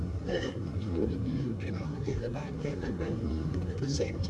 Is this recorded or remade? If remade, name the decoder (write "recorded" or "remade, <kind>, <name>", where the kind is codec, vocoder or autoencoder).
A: remade, codec, SNAC